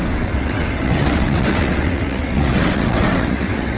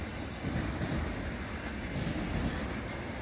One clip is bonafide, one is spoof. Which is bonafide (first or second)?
second